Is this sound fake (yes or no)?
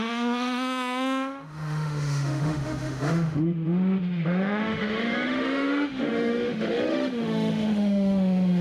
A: yes